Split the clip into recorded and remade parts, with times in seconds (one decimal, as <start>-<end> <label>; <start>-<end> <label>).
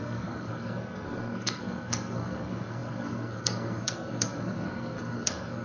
0.0-5.6 remade